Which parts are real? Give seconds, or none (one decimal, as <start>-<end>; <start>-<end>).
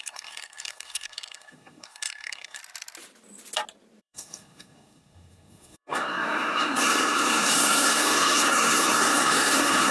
2.6-4.0